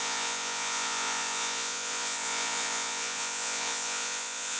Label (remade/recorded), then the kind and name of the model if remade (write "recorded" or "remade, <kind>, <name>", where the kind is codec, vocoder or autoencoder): remade, vocoder, Vocos